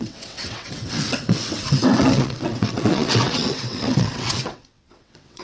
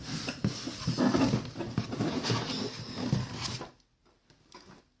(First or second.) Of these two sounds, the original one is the second